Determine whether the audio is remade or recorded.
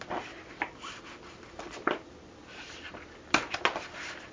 recorded